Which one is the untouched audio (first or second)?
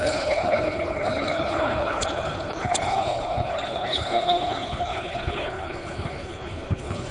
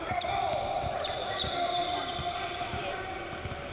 second